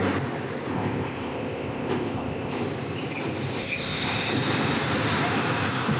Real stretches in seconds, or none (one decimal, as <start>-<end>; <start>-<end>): 0.0-0.7; 2.6-3.6; 4.3-6.0